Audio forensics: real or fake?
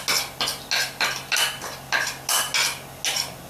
real